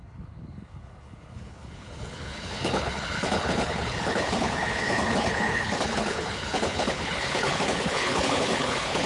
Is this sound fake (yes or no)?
yes